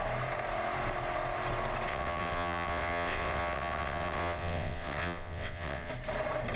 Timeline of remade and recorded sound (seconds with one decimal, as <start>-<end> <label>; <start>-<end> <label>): 0.0-1.9 recorded; 1.9-5.9 remade; 5.9-6.6 recorded